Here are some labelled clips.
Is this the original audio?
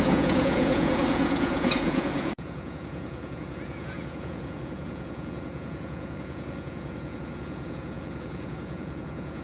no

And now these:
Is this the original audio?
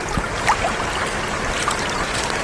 yes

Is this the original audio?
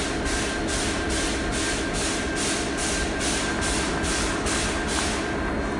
yes